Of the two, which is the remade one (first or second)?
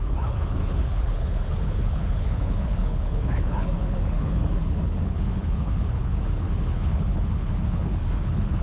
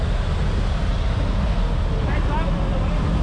first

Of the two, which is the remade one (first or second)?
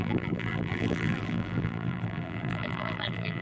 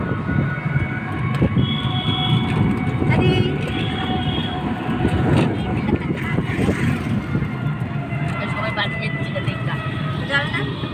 first